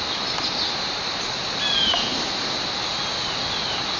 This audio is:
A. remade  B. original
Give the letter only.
B